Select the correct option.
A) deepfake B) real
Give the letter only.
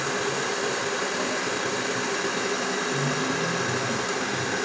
B